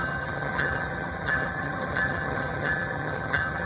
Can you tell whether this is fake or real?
fake